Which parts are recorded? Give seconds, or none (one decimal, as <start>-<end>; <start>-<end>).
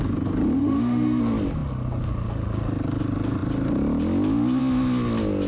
0.0-0.6; 1.2-5.5